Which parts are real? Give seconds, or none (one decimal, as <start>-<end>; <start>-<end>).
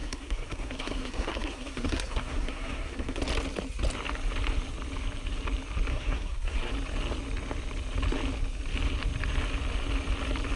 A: 3.2-5.9; 6.7-10.6